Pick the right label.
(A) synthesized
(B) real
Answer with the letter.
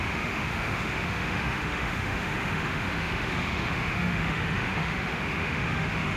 A